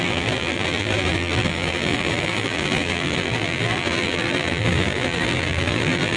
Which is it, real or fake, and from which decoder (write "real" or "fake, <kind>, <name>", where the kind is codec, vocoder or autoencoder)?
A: fake, vocoder, BigVGAN v2